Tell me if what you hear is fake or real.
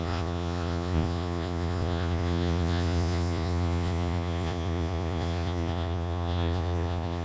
fake